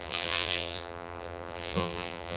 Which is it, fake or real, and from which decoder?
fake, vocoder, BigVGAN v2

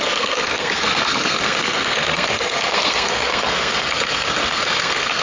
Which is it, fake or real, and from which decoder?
fake, codec, SNAC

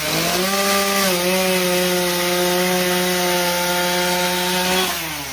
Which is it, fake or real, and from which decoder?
real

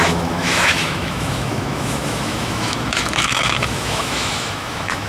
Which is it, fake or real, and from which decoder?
fake, autoencoder, DAC-VAE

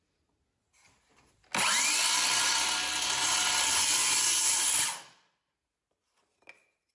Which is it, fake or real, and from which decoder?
real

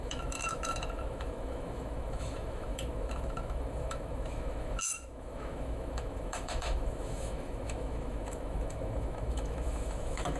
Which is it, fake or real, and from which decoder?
fake, autoencoder, DAC-VAE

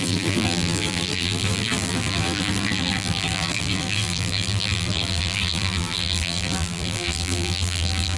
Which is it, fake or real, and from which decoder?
fake, vocoder, BigVGAN v2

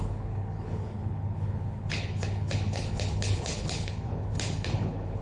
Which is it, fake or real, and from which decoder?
fake, codec, HILCodec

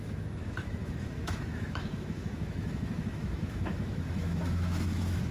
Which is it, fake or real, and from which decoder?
fake, autoencoder, DAC-VAE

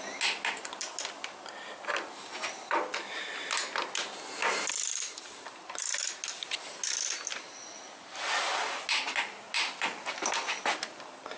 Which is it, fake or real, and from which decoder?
real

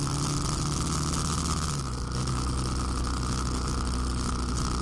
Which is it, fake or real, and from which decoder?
real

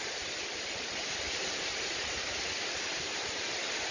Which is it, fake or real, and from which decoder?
real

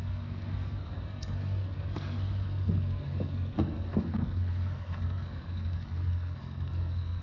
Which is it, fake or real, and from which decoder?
fake, codec, SNAC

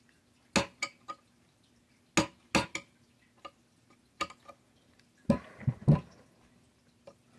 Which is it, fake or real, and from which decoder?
real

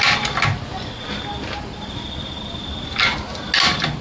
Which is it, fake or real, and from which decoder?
real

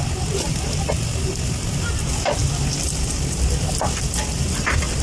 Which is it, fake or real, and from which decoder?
real